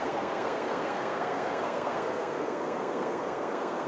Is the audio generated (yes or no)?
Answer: yes